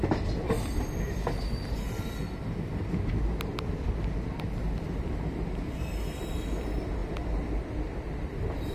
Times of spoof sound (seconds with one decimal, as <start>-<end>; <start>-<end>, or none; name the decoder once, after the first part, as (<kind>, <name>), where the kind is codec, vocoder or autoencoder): none

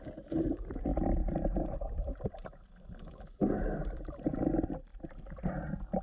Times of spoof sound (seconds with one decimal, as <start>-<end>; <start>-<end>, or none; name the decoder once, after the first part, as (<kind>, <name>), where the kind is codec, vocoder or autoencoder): 0.9-4.5 (vocoder, BigVGAN v2)

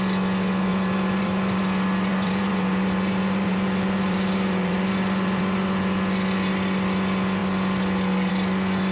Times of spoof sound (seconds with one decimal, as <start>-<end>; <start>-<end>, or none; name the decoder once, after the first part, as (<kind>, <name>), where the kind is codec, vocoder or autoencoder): 0.7-1.6 (vocoder, BigVGAN v2); 2.1-5.4

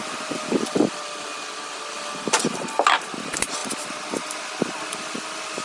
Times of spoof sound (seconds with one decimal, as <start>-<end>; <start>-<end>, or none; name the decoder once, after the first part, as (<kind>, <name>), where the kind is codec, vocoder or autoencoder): none

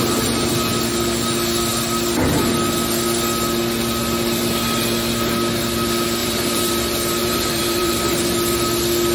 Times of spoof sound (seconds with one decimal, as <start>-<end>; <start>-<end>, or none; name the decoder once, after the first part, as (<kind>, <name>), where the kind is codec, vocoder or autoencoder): 6.2-6.7 (vocoder, BigVGAN v2); 7.2-8.0

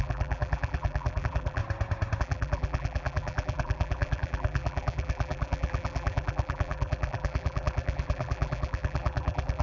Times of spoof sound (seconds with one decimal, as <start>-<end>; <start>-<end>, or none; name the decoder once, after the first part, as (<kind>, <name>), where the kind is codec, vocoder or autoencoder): 0.0-1.6 (vocoder, BigVGAN v2); 2.2-9.6

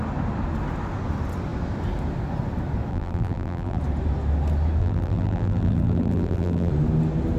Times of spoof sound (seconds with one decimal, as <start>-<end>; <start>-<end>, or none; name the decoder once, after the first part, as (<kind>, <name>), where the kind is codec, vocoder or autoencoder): 2.9-3.8 (vocoder, BigVGAN v2); 4.8-6.7

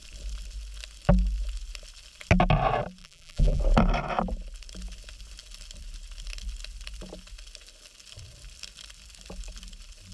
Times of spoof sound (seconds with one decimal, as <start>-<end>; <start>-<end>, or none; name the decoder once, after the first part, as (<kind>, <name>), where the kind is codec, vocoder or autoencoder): 3.0-3.6 (vocoder, BigVGAN v2)